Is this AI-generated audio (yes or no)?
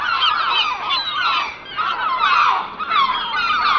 no